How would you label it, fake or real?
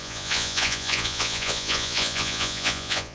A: fake